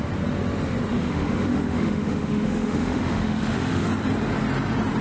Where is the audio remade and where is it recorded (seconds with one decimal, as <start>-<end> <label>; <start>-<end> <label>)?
0.0-0.9 recorded; 0.9-3.9 remade; 3.9-5.0 recorded